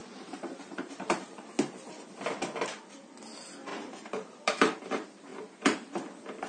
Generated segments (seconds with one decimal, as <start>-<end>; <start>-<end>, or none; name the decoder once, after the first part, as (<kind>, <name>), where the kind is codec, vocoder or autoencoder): 0.0-1.4 (vocoder, BigVGAN v2); 3.7-4.8